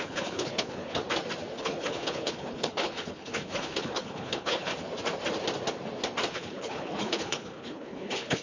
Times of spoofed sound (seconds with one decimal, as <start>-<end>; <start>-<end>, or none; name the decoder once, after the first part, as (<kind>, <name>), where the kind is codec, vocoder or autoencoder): 0.0-1.0 (codec, HILCodec); 1.6-4.7; 6.3-8.4